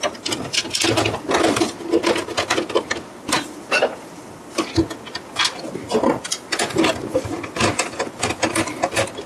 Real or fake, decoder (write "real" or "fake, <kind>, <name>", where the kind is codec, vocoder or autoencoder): real